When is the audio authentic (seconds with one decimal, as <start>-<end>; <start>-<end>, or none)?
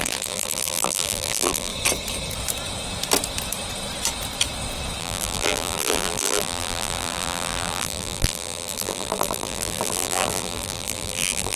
1.7-5.0